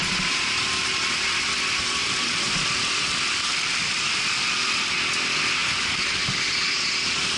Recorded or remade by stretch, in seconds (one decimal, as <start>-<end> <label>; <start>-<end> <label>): 0.0-2.0 recorded; 2.0-2.8 remade; 2.8-3.5 recorded; 3.5-4.9 remade; 4.9-5.6 recorded; 5.6-6.1 remade; 6.1-7.4 recorded

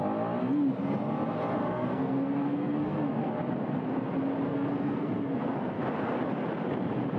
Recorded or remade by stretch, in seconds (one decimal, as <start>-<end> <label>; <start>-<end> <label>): 0.0-1.6 recorded; 1.6-3.3 remade; 3.3-4.5 recorded; 4.5-5.8 remade; 5.8-7.2 recorded

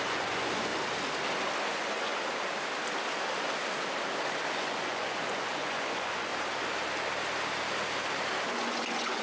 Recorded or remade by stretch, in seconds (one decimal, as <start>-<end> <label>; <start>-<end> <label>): 0.0-0.7 remade; 0.7-1.7 recorded; 1.7-2.1 remade; 2.1-4.6 recorded; 4.6-6.3 remade; 6.3-8.5 recorded; 8.5-9.2 remade